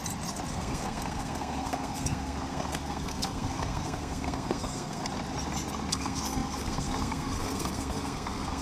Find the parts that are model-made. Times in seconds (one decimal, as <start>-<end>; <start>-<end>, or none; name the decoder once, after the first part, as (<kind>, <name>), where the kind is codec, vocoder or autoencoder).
0.5-5.0 (codec, SNAC); 5.9-8.6